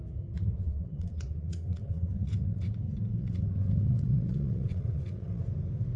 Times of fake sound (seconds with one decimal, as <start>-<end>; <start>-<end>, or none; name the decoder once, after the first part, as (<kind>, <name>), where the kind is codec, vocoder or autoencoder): 0.6-2.7 (vocoder, WaveNeXt); 3.1-5.4

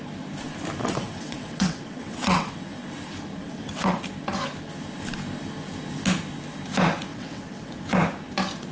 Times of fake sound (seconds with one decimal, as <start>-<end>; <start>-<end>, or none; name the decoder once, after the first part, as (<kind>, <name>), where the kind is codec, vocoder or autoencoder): 0.8-2.5 (vocoder, WaveNeXt); 3.4-4.0; 7.1-7.7

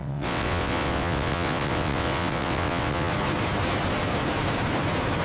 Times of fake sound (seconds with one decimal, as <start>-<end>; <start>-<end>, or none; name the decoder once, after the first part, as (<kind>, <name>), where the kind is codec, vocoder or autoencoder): 0.0-3.1 (vocoder, WaveNeXt)

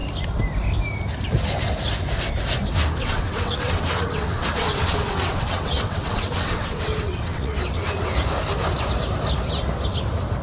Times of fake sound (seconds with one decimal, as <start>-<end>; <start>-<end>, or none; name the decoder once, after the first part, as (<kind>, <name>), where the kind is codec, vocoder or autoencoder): 3.0-8.1 (vocoder, WaveNeXt)

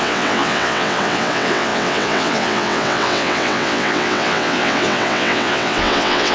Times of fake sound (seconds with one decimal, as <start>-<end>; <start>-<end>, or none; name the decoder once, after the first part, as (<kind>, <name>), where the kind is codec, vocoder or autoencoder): 0.0-6.3 (vocoder, WaveNeXt)

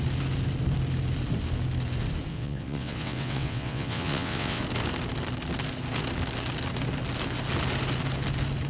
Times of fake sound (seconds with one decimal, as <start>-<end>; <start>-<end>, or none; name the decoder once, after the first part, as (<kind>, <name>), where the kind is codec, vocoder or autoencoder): 2.3-4.6 (vocoder, WaveNeXt)

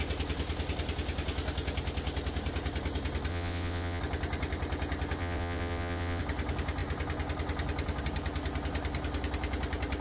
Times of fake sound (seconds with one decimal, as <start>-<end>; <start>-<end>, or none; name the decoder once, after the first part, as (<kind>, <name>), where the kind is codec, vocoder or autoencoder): 3.3-4.0 (vocoder, WaveNeXt); 5.2-6.2